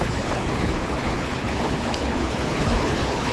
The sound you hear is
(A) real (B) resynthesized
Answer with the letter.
B